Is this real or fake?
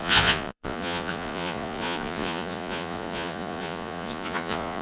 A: fake